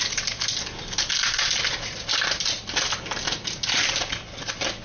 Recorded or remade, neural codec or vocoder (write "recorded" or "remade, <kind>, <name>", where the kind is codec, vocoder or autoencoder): recorded